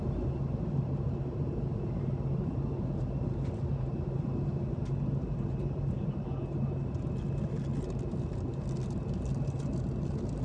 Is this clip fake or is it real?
real